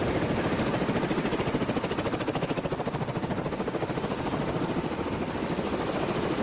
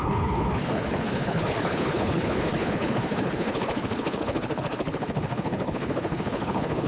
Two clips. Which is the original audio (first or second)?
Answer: first